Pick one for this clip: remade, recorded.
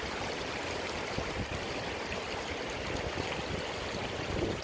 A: recorded